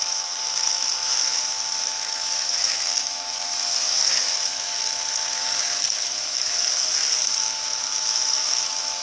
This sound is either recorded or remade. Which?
remade